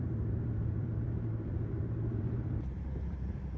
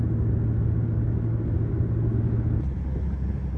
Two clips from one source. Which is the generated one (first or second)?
first